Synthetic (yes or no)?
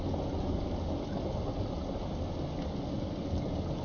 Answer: no